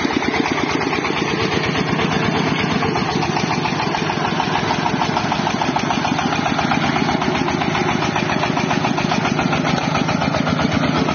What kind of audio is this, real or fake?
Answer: real